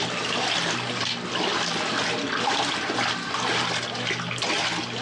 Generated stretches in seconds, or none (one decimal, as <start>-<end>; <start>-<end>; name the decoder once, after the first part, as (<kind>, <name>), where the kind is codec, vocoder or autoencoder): none